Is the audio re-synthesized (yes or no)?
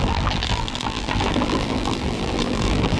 yes